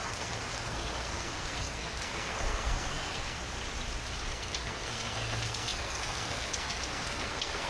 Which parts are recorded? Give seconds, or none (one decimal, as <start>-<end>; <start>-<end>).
3.4-4.3